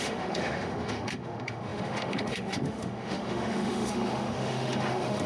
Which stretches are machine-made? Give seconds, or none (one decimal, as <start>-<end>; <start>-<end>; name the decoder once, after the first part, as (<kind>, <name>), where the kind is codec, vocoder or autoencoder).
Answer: 0.0-5.3 (autoencoder, DAC-VAE)